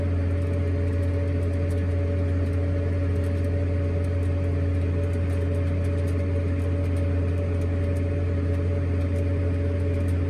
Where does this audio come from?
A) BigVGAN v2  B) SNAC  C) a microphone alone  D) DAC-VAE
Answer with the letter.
C